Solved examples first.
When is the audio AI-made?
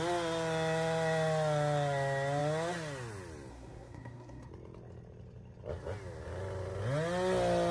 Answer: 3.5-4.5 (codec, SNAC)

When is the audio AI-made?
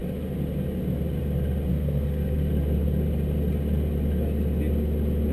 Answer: 1.7-2.5 (codec, SNAC)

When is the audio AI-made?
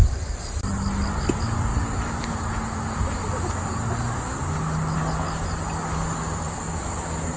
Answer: none